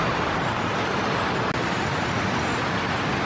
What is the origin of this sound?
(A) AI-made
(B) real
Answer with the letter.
B